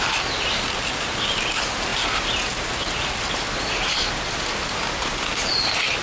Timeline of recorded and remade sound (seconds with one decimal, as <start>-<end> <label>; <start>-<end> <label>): 0.0-6.0 recorded